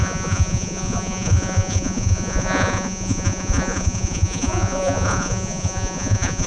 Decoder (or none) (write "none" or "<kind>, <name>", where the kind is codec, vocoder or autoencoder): vocoder, Vocos